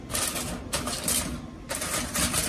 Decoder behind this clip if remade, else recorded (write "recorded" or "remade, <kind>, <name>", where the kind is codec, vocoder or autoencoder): recorded